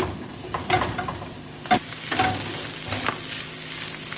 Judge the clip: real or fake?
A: real